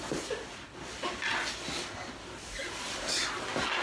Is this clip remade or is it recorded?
recorded